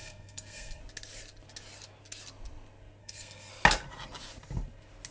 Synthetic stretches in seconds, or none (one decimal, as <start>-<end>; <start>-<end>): 0.0-0.8; 3.0-3.5